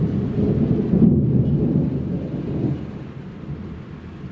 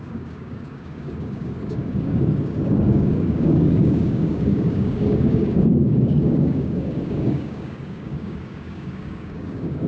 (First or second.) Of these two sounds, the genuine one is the first